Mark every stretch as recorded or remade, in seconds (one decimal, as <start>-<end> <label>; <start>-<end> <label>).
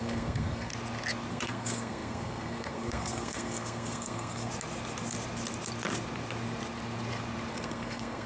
0.0-0.7 remade; 0.7-1.3 recorded; 1.3-4.5 remade; 4.5-7.5 recorded; 7.5-8.3 remade